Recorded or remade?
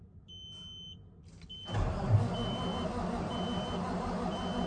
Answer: recorded